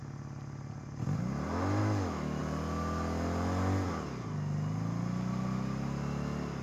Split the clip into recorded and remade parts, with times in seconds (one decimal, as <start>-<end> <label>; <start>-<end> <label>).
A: 0.0-1.8 recorded; 1.8-2.4 remade; 2.4-6.6 recorded

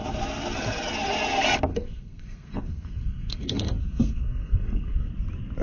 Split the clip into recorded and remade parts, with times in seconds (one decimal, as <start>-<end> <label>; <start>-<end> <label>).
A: 0.0-1.7 recorded; 1.7-5.1 remade; 5.1-5.6 recorded

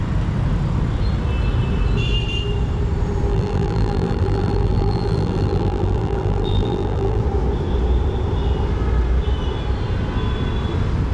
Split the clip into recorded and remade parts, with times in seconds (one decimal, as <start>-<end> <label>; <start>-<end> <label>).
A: 0.0-3.3 recorded; 3.3-7.2 remade; 7.2-11.1 recorded

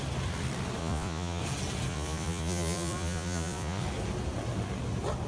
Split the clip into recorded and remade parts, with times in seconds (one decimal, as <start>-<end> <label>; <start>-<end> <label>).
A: 0.0-0.8 recorded; 0.8-1.4 remade; 1.4-1.9 recorded; 1.9-3.8 remade; 3.8-5.3 recorded

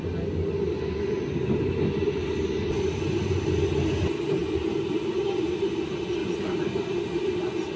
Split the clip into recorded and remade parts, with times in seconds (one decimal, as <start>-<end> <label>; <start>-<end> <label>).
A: 0.0-4.4 recorded; 4.4-5.6 remade; 5.6-6.2 recorded; 6.2-7.0 remade; 7.0-7.8 recorded